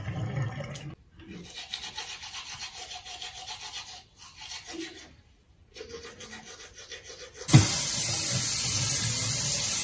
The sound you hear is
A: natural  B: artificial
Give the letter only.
A